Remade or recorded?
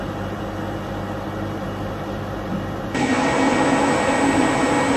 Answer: recorded